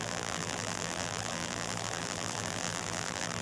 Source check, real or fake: fake